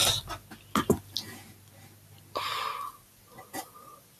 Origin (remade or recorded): recorded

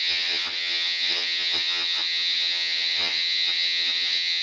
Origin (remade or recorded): remade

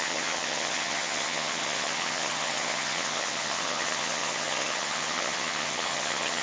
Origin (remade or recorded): remade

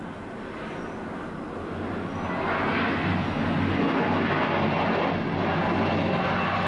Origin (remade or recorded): recorded